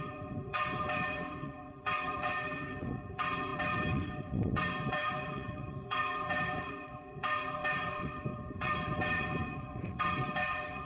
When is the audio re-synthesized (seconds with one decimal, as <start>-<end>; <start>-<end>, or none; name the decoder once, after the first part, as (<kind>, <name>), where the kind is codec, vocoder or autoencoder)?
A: 0.0-10.9 (vocoder, WaveNeXt)